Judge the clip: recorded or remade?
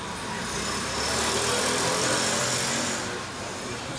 recorded